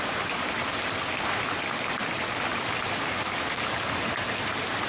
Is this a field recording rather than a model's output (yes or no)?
yes